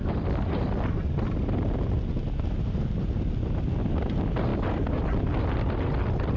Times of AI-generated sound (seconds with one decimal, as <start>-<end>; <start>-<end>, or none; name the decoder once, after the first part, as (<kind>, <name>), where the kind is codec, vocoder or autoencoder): none